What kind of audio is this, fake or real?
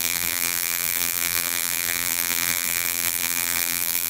fake